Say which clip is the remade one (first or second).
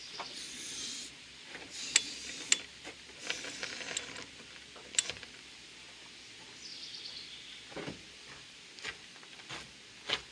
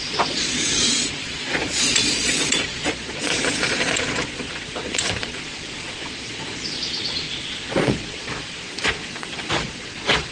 second